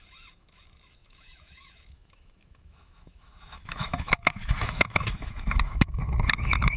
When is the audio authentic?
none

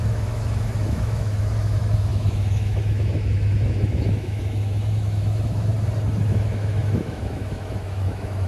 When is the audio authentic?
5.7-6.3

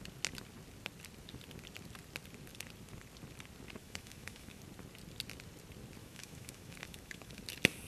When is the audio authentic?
0.0-3.8; 4.6-6.0; 7.4-7.9